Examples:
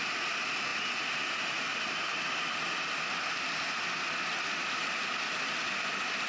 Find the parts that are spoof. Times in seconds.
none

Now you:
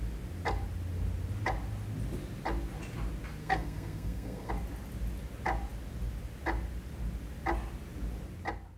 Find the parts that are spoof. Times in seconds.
3.4-4.5

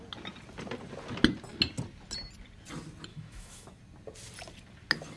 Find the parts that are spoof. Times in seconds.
3.1-3.8

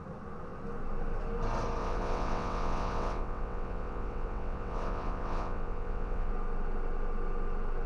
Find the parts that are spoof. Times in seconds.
1.8-6.3

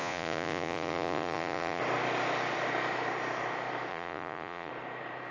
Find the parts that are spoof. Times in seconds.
0.0-1.8; 3.9-4.7

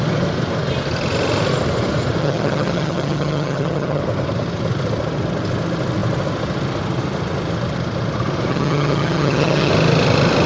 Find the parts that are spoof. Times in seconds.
2.2-4.0; 8.5-9.7

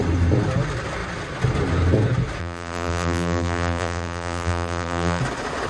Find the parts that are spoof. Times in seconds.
2.4-5.2